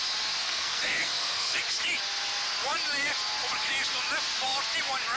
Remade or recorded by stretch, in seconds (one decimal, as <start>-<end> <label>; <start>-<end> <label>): 0.0-0.4 recorded; 0.4-1.6 remade; 1.6-5.2 recorded